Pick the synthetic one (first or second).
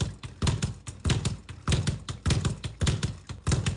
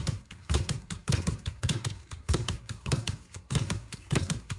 second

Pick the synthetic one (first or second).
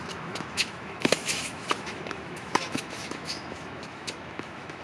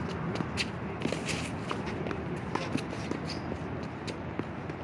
first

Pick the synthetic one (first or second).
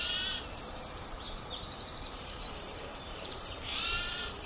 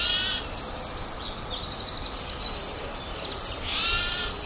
first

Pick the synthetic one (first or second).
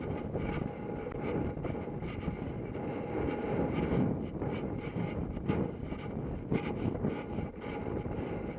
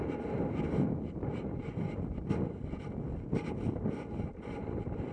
second